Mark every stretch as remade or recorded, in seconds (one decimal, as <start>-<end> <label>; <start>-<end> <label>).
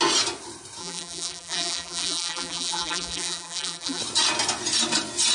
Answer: 0.0-0.8 recorded; 0.8-4.0 remade; 4.0-5.3 recorded